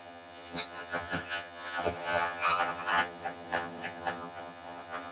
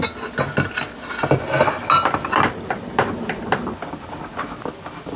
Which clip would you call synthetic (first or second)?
first